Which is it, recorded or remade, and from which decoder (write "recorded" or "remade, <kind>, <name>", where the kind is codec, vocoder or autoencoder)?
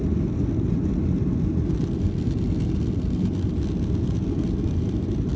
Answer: recorded